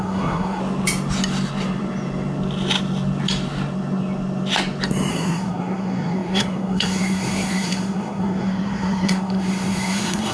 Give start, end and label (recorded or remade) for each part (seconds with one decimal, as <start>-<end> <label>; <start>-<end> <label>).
0.0-0.6 remade; 0.6-5.1 recorded; 5.1-10.3 remade